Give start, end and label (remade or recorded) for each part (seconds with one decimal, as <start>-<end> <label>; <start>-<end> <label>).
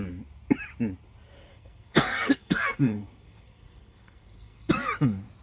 0.0-1.5 recorded; 1.5-4.7 remade; 4.7-5.4 recorded